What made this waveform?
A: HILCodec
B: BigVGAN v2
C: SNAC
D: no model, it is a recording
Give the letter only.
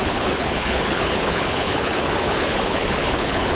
A